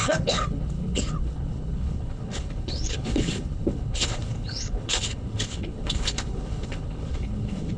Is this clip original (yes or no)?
no